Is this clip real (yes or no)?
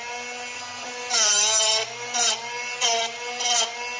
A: yes